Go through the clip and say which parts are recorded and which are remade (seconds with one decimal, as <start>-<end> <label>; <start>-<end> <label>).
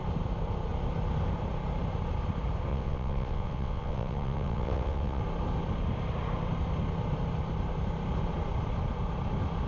0.0-2.7 recorded; 2.7-5.2 remade; 5.2-9.7 recorded